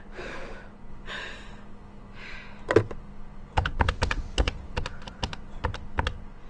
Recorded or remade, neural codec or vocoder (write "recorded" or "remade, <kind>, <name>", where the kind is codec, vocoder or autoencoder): recorded